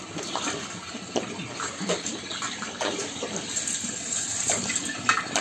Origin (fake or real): fake